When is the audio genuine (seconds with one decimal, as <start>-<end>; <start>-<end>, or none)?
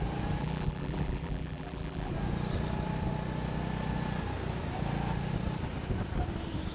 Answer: 0.0-0.4; 2.1-6.7